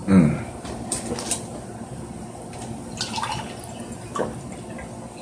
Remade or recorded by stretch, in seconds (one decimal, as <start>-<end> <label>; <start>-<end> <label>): 0.0-1.1 remade; 1.1-5.2 recorded